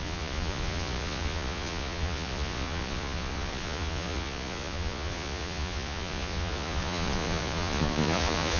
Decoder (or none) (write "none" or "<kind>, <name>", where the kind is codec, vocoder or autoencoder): vocoder, Vocos